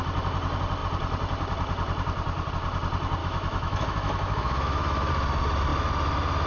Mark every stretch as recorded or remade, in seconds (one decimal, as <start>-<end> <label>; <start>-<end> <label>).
0.0-3.2 recorded; 3.2-5.1 remade; 5.1-6.5 recorded